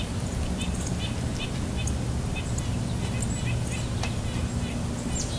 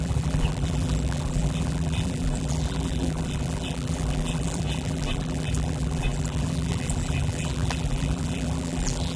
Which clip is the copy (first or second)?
second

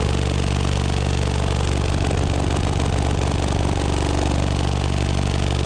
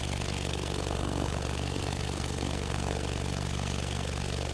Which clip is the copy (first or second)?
second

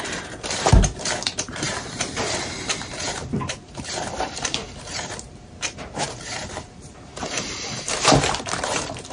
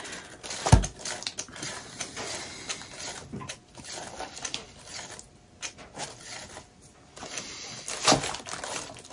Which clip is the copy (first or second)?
first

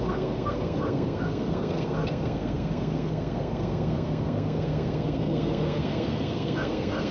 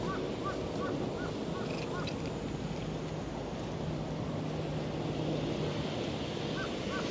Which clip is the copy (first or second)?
first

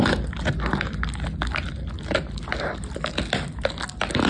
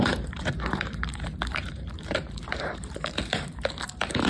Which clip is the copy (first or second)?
second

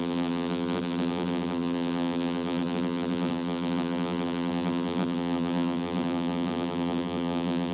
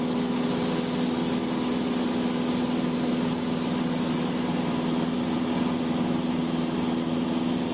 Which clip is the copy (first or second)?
first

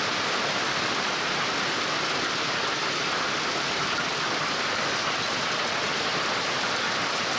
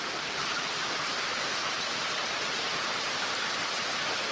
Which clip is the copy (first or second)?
second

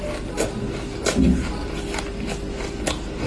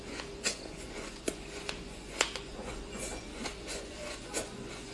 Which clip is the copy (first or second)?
second